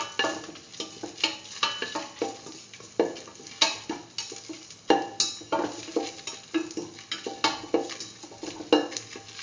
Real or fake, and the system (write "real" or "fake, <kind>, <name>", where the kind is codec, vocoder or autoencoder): real